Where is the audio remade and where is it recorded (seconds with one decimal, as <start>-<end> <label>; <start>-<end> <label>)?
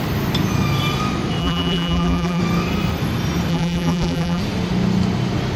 0.0-1.4 recorded; 1.4-2.4 remade; 2.4-3.5 recorded; 3.5-4.4 remade; 4.4-5.6 recorded